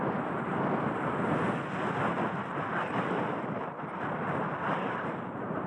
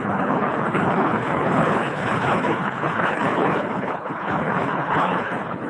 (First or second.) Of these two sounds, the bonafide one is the first